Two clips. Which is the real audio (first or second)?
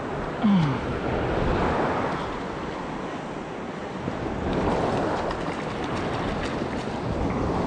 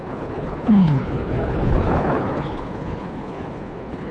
first